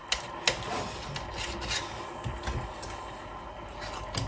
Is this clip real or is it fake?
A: real